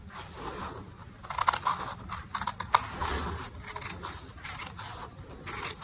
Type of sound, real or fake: real